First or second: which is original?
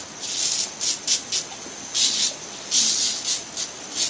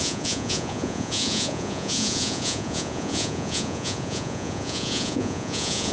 first